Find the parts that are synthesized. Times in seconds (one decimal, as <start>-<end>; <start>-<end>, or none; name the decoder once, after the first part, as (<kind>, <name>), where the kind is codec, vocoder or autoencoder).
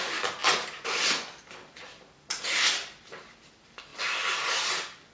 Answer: none